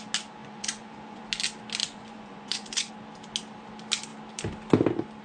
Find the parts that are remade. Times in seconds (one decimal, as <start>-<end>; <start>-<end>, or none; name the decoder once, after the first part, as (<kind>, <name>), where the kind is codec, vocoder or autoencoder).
0.4-1.2 (vocoder, Vocos); 1.8-2.9